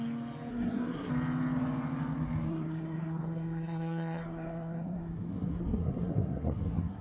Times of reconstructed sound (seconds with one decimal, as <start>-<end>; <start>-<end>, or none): 0.5-1.1; 2.5-7.0